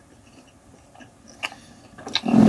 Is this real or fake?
real